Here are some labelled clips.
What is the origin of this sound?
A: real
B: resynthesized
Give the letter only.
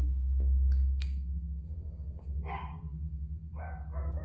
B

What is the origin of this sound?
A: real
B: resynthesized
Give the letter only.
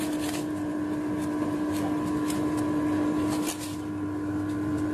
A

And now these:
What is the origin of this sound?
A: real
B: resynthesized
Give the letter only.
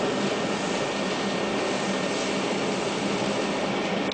A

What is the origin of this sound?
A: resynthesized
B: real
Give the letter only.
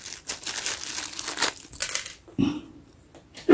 B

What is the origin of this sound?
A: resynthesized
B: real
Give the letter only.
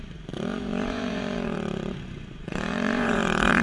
A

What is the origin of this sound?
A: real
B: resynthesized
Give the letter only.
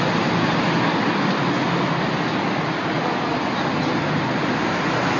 A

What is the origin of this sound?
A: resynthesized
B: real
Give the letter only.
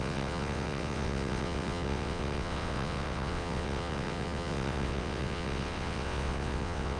A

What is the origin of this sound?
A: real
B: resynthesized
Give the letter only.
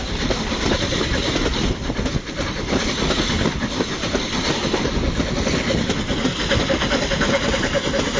A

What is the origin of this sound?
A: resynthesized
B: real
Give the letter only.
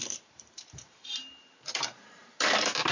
A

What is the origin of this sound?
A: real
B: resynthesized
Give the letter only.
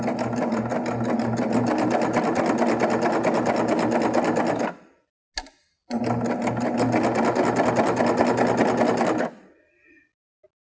A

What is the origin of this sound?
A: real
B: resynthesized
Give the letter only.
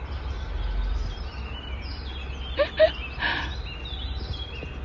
A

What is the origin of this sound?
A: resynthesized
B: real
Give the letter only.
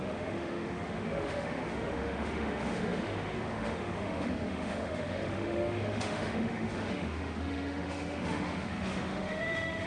A